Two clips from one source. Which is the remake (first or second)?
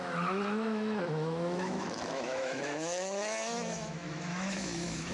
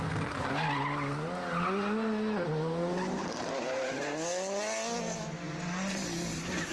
first